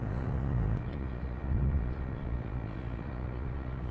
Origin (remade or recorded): remade